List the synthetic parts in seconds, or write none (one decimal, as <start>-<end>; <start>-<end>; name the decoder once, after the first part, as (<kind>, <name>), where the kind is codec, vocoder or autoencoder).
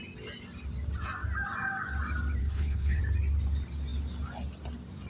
2.4-3.0 (codec, HILCodec)